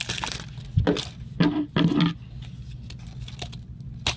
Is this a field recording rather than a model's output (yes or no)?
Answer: yes